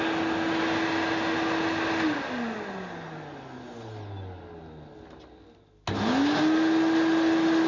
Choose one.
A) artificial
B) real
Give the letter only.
B